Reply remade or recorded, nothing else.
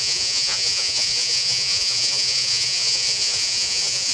remade